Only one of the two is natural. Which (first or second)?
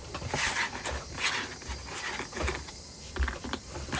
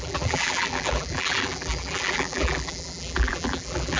first